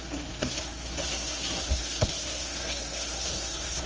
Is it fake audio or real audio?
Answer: fake